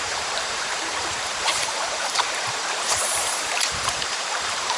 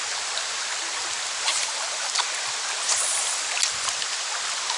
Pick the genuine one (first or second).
second